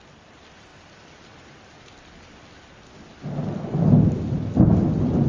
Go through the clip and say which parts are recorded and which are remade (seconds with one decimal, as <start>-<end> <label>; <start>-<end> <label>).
0.0-5.3 recorded

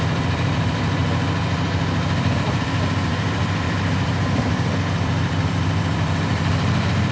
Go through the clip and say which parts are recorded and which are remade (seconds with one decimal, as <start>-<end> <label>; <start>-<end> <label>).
0.0-1.0 remade; 1.0-2.0 recorded; 2.0-7.1 remade

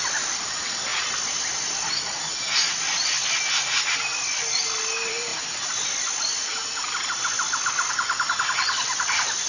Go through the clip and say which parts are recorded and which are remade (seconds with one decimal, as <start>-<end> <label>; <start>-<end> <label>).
0.0-0.9 remade; 0.9-4.8 recorded; 4.8-5.3 remade; 5.3-7.9 recorded; 7.9-9.5 remade

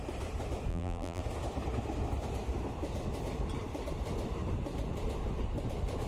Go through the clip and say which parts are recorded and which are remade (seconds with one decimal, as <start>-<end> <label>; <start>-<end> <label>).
0.0-0.7 recorded; 0.7-1.2 remade; 1.2-6.1 recorded

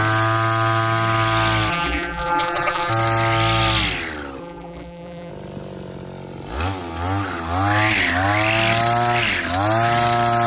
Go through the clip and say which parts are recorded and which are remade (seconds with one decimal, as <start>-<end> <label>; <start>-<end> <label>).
0.0-1.7 recorded; 1.7-2.9 remade; 2.9-4.4 recorded; 4.4-5.3 remade; 5.3-10.5 recorded